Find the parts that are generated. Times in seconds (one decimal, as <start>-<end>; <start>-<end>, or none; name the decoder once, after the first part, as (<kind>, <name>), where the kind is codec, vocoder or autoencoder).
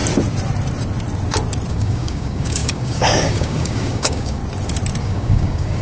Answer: 1.7-4.4 (codec, DAC); 5.0-5.8